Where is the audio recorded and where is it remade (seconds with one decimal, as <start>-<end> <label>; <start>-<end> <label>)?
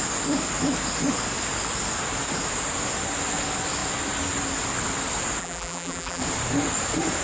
0.0-5.4 recorded; 5.4-6.2 remade; 6.2-7.2 recorded